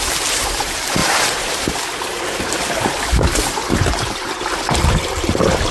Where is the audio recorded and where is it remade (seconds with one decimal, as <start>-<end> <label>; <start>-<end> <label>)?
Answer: 0.0-5.7 recorded